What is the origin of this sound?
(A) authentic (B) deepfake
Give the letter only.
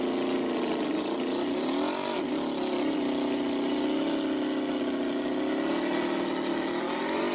A